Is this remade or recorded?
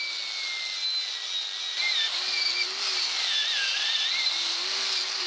recorded